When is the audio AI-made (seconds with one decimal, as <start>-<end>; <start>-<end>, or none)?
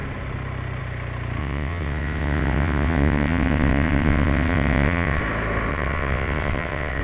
1.4-5.2; 5.7-7.0